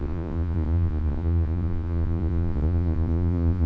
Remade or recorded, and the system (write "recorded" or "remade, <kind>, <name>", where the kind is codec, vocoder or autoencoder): remade, vocoder, Vocos